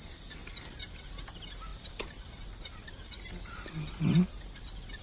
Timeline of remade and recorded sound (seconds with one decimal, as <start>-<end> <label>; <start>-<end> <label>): 0.0-1.7 recorded; 1.7-5.0 remade